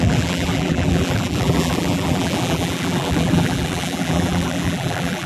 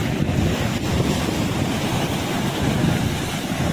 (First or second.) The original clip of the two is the second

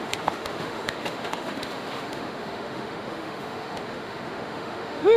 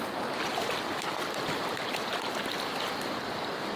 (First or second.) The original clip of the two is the second